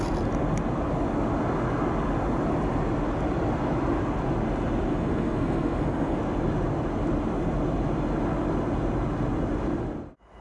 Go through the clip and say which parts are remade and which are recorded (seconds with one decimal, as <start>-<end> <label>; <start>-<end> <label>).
0.0-4.9 recorded; 4.9-6.2 remade; 6.2-10.4 recorded